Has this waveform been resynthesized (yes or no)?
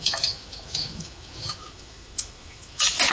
yes